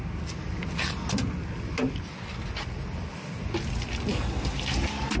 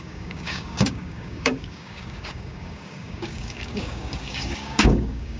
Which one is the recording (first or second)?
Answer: first